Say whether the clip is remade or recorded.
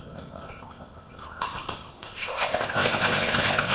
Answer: remade